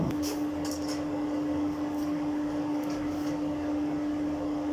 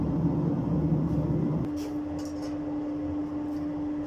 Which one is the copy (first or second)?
first